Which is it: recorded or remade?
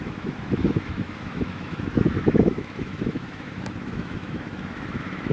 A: remade